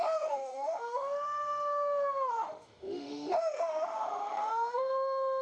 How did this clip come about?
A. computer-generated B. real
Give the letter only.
A